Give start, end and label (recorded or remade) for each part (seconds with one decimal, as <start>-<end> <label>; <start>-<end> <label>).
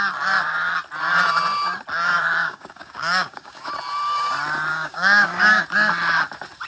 0.0-2.4 recorded; 2.4-3.7 remade; 3.7-4.7 recorded; 4.7-5.6 remade; 5.6-6.7 recorded